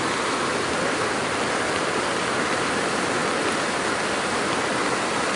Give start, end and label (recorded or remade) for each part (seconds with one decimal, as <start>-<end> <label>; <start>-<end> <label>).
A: 0.0-5.4 recorded